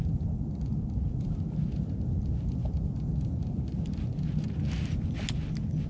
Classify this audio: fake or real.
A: real